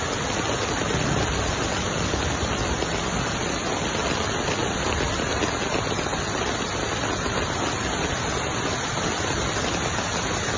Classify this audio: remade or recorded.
recorded